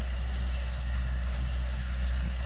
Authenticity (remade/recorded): remade